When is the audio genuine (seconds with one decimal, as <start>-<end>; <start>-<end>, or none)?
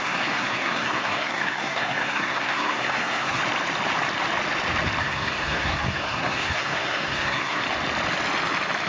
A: 3.4-5.0; 7.6-8.9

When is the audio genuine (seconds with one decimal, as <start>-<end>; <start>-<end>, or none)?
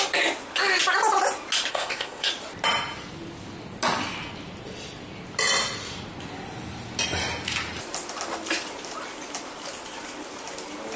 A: 0.0-1.7; 2.3-11.0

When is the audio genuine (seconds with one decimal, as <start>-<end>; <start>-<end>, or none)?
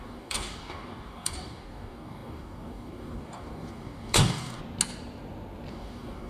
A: 4.6-5.7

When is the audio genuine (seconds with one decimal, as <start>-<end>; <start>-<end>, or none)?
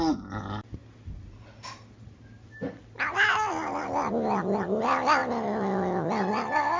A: 0.0-6.8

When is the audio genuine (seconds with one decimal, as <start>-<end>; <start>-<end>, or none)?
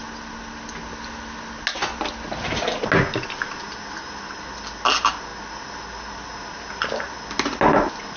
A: 0.0-8.2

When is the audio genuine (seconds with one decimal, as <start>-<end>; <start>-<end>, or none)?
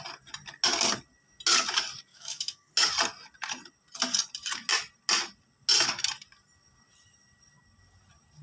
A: 0.0-2.1; 2.7-8.4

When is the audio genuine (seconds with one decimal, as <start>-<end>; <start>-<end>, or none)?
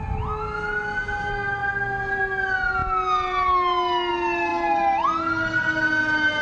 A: 0.0-6.4